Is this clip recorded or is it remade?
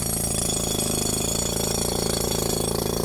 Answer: recorded